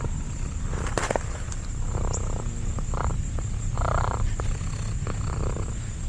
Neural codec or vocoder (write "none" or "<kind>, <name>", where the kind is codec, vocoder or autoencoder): none